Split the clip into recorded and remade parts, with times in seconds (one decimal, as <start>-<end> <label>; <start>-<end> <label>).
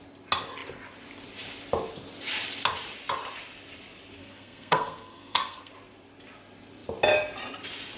0.0-4.2 recorded; 4.2-5.7 remade; 5.7-8.0 recorded